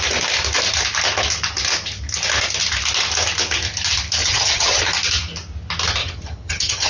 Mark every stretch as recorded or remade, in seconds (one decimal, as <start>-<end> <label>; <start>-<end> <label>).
0.0-4.2 recorded; 4.2-4.8 remade; 4.8-6.0 recorded; 6.0-6.9 remade